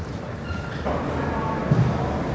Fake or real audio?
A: real